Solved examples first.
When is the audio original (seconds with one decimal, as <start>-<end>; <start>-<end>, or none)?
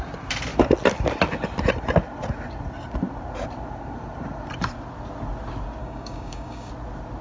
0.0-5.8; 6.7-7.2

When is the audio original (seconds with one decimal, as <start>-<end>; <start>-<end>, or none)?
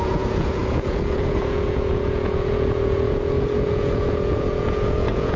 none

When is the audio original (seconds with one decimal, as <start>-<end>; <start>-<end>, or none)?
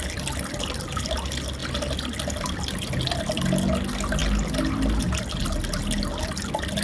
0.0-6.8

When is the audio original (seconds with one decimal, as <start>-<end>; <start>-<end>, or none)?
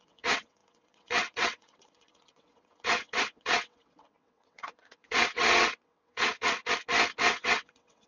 6.6-7.2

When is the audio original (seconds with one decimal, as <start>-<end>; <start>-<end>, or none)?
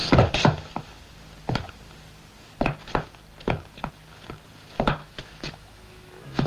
0.0-5.0